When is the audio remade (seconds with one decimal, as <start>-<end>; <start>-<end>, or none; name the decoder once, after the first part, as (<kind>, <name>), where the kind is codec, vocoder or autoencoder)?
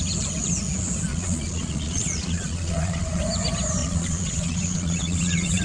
1.1-3.2 (vocoder, Vocos); 3.8-5.6